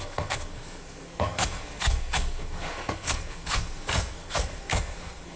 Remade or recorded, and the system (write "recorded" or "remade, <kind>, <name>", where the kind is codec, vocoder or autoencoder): remade, codec, SNAC